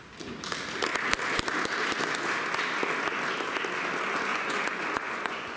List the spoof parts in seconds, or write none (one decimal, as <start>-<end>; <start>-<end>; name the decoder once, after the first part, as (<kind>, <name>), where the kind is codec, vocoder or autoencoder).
4.3-5.6 (vocoder, Vocos)